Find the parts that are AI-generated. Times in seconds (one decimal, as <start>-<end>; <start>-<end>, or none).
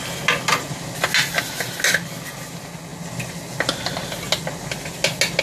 none